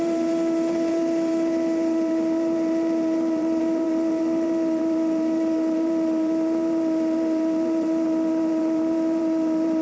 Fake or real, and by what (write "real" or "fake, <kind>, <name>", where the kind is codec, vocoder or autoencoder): fake, vocoder, BigVGAN v2